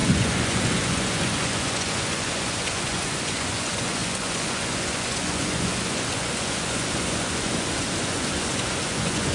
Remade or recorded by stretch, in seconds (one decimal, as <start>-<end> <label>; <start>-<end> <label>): 0.0-9.3 remade